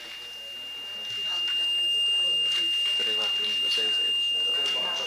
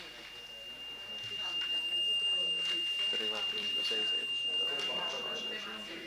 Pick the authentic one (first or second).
first